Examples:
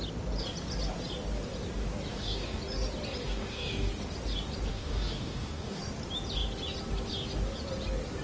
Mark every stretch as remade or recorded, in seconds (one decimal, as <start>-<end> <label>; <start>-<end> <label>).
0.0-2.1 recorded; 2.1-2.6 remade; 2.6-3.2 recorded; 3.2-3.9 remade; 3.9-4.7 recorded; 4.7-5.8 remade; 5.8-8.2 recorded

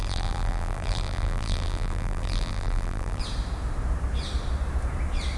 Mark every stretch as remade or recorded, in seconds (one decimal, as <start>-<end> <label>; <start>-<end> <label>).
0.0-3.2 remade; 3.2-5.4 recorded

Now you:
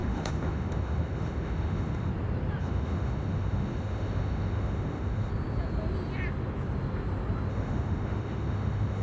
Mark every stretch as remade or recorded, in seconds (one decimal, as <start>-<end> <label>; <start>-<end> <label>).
0.0-2.1 remade; 2.1-2.6 recorded; 2.6-5.3 remade; 5.3-7.5 recorded; 7.5-9.0 remade

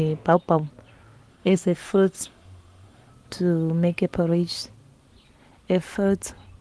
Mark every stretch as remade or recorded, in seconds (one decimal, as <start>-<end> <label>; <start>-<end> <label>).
0.0-1.3 recorded; 1.3-3.1 remade; 3.1-6.6 recorded

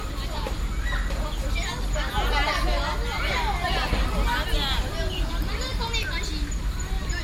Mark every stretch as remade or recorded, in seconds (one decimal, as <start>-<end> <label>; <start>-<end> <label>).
0.0-7.2 recorded